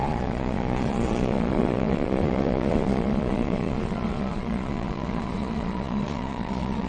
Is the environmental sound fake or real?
fake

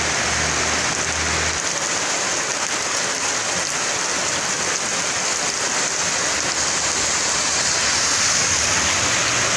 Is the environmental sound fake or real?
real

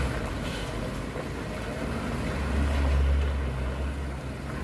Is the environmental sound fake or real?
real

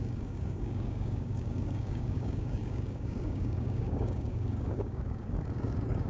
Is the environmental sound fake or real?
fake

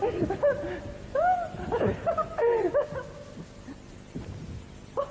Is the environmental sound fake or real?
real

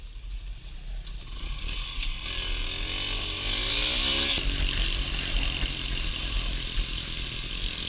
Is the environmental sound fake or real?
real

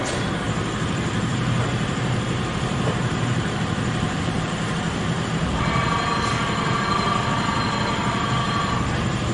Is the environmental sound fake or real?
fake